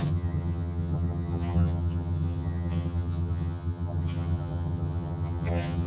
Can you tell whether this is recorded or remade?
remade